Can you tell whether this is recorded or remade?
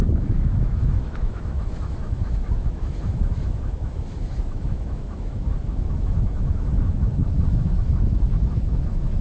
remade